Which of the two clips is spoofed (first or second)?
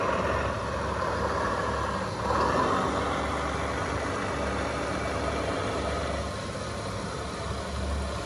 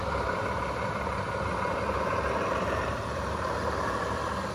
second